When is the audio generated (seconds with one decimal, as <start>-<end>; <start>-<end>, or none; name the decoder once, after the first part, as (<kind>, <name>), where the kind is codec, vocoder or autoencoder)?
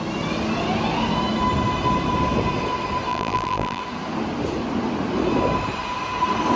3.1-3.8 (vocoder, BigVGAN v2)